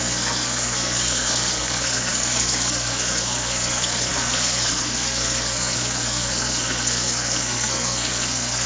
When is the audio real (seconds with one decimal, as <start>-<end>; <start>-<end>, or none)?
none